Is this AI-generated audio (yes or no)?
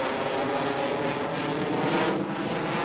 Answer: no